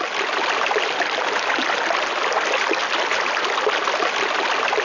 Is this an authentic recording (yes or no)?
yes